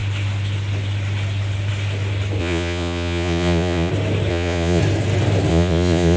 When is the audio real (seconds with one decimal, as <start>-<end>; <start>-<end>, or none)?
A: 0.0-2.4; 3.9-4.3; 4.8-5.5